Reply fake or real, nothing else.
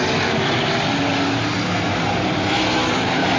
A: real